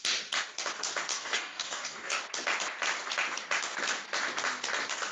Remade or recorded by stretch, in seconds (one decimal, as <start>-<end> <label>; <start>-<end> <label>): 0.0-1.1 recorded; 1.1-2.2 remade; 2.2-5.1 recorded